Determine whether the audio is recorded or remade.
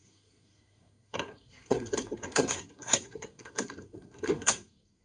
remade